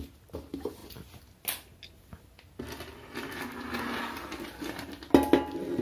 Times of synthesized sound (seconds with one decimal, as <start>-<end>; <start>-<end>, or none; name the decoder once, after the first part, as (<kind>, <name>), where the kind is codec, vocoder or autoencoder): none